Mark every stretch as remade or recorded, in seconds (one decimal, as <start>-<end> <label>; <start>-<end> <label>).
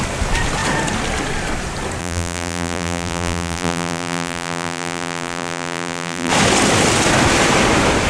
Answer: 0.0-2.0 recorded; 2.0-6.3 remade; 6.3-8.1 recorded